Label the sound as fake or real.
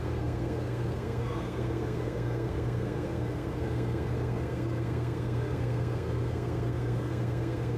fake